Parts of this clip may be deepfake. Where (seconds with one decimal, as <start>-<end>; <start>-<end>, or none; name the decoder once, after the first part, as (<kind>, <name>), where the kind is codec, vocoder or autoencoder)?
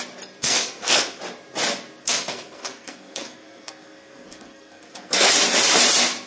0.4-1.2 (codec, SNAC); 2.0-5.3